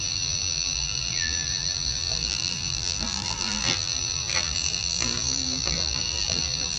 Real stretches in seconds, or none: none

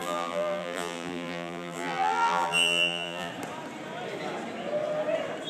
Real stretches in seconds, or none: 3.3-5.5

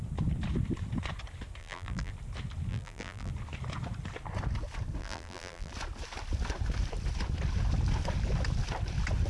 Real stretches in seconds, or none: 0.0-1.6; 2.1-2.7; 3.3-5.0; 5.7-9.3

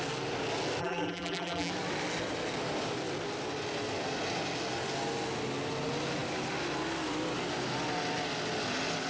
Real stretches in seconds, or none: 0.0-0.8; 1.7-9.1

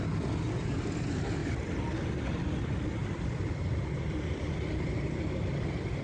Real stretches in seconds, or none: 0.0-1.4; 2.2-3.0; 4.2-6.0

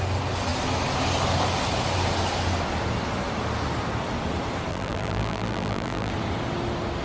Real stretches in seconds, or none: 0.0-4.7; 6.1-7.0

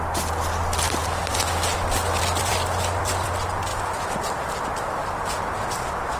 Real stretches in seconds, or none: 0.0-1.0; 3.3-3.7; 5.0-6.2

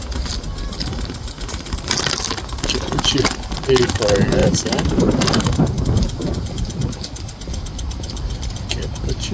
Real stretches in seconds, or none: 0.0-4.4; 5.8-9.3